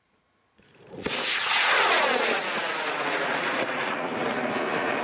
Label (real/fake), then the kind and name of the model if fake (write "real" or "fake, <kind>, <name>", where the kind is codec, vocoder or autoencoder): fake, vocoder, Vocos